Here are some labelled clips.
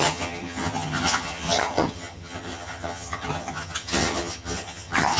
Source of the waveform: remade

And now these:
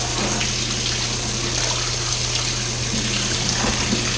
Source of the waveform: recorded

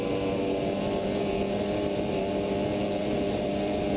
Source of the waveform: recorded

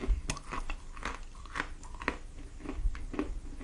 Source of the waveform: recorded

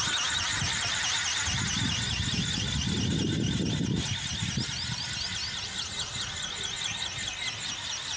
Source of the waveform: recorded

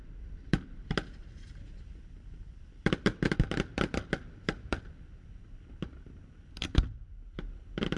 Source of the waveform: remade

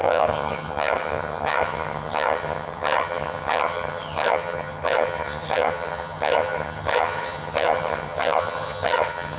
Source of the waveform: remade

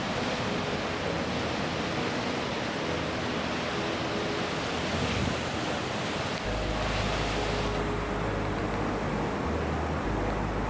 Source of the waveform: recorded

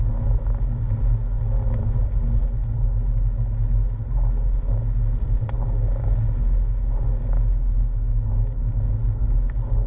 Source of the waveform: recorded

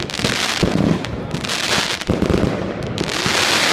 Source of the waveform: recorded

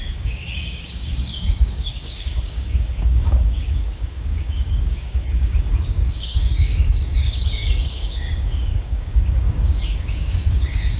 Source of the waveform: remade